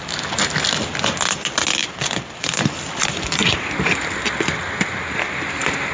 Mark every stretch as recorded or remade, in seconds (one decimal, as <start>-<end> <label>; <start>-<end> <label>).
0.0-1.8 recorded; 1.8-5.3 remade; 5.3-5.9 recorded